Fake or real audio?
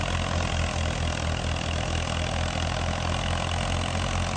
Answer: real